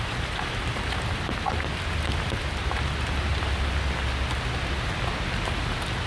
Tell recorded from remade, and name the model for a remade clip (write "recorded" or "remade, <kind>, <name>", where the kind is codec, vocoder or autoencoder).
recorded